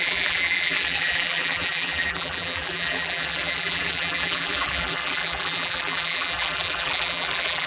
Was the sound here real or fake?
fake